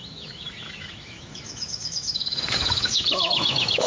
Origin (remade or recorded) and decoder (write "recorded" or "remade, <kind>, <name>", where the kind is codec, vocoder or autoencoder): remade, autoencoder, DAC-VAE